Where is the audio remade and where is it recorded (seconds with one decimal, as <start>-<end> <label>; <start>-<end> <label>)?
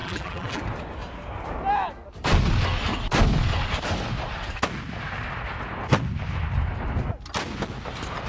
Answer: 0.0-0.6 remade; 0.6-8.3 recorded